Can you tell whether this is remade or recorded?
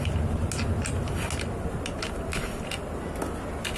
recorded